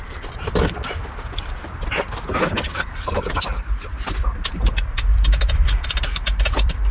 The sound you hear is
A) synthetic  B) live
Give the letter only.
A